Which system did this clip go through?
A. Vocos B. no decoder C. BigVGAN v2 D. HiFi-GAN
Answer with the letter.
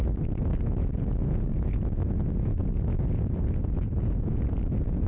A